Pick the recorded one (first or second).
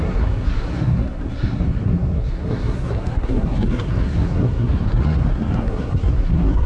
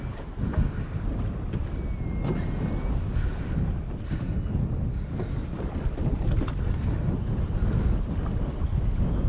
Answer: second